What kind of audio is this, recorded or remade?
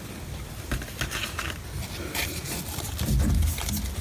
recorded